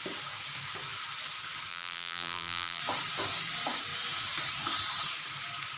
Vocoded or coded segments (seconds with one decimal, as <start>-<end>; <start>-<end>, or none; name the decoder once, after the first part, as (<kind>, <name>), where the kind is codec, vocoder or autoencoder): 1.7-2.8 (vocoder, BigVGAN v2)